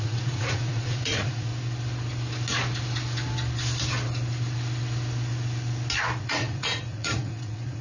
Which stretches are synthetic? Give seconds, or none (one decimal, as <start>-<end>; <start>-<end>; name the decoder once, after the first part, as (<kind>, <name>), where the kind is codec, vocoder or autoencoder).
0.0-1.5 (vocoder, Vocos); 6.2-7.8